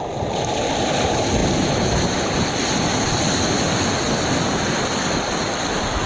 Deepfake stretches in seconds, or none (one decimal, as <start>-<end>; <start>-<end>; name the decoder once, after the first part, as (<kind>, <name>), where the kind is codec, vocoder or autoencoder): none

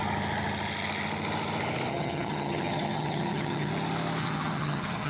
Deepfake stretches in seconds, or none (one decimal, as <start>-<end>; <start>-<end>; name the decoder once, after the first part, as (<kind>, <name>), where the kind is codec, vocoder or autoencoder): 1.9-3.7 (vocoder, HiFi-GAN); 4.2-5.1

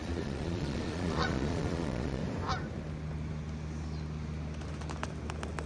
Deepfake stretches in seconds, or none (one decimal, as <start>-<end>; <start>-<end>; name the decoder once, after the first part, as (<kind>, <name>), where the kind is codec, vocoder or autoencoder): 0.0-2.2 (vocoder, Vocos)